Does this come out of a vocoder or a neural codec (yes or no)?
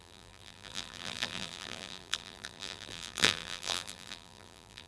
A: yes